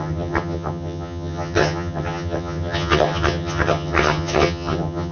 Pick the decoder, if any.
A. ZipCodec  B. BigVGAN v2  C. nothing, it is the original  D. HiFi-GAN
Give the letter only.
D